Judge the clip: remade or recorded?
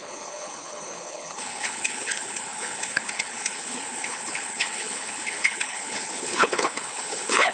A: remade